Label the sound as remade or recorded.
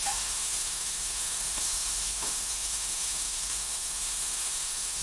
remade